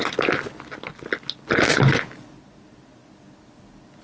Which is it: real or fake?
real